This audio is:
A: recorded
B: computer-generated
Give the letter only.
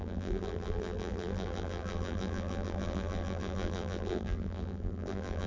B